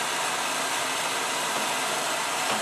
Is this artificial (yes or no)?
no